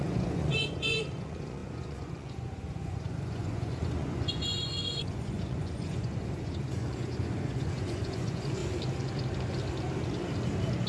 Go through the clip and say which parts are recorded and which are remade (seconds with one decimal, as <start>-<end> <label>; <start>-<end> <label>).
0.0-8.6 remade; 8.6-10.9 recorded